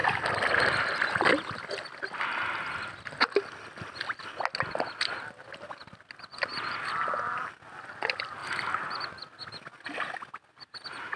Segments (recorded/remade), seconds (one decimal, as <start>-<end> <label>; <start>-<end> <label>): 0.0-11.2 recorded